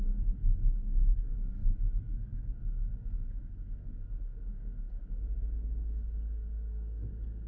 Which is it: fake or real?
fake